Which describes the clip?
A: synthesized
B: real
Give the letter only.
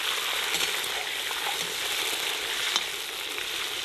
B